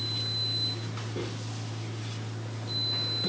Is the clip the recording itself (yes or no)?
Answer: yes